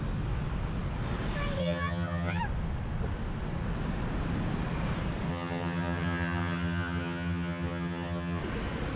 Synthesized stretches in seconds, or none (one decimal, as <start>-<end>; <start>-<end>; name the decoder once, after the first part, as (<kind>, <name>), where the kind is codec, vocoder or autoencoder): 1.6-2.4 (vocoder, HiFi-GAN); 5.3-8.4